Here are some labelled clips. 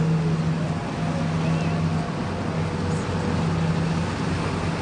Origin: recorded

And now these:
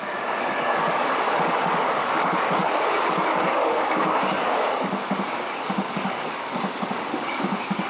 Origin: remade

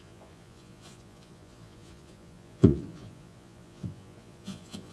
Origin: remade